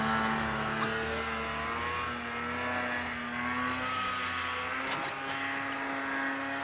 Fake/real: real